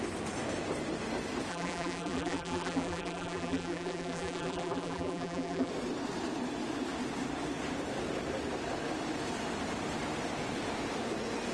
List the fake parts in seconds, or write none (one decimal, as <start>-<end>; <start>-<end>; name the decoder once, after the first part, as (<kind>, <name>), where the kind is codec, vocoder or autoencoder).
1.5-5.7 (vocoder, BigVGAN v2)